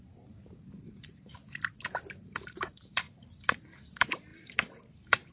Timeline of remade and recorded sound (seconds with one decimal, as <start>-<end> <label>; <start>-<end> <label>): 0.0-1.4 remade; 1.4-2.3 recorded; 2.3-5.3 remade